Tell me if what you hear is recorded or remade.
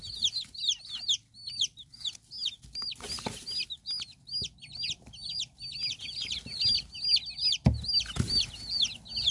recorded